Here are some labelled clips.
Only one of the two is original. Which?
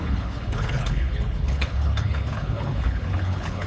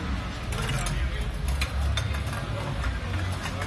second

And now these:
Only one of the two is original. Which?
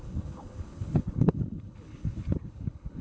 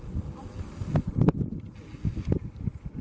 second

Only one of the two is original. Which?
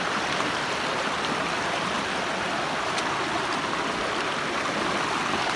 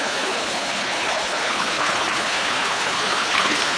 first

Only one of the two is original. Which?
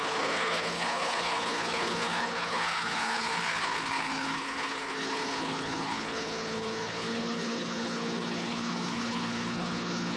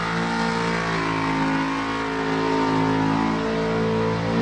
second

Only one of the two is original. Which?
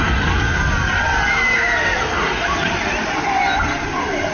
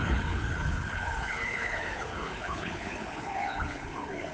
first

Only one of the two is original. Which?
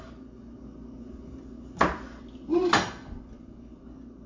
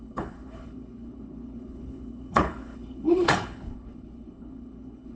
first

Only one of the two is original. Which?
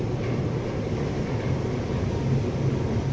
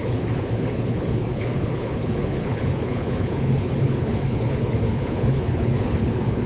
first